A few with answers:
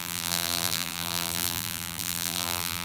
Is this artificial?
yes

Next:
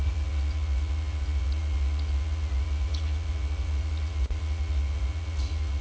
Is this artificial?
yes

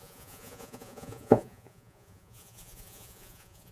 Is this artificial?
yes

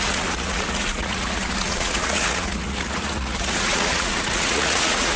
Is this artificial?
yes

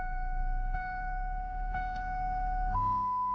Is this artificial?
yes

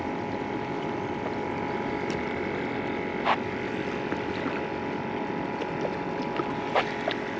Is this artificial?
no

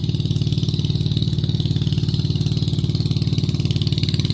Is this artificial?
no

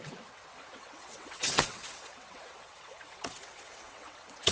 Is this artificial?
yes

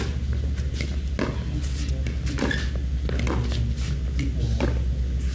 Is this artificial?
no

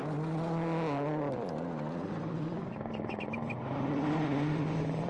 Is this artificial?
no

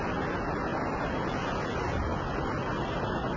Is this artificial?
no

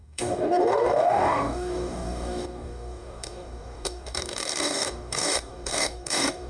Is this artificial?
yes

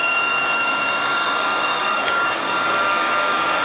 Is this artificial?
yes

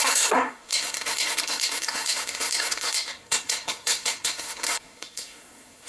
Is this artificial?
yes